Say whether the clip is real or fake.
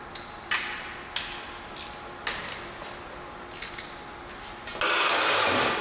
real